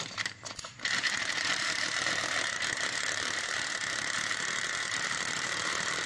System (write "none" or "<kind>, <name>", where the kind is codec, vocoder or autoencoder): vocoder, BigVGAN v2